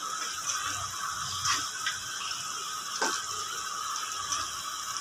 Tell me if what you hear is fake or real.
real